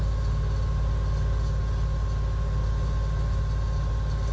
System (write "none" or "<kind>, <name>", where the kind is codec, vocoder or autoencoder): none